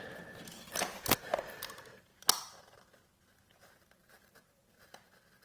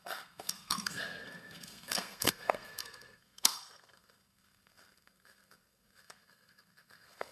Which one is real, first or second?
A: first